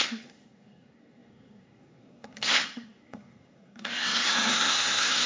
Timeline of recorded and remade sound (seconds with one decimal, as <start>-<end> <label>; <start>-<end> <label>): 0.0-5.3 remade